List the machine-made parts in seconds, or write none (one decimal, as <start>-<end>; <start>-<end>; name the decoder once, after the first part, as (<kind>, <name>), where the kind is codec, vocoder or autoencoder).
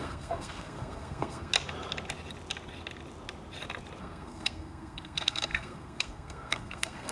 0.0-1.5 (codec, SNAC); 4.0-7.1